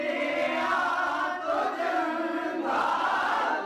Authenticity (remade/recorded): recorded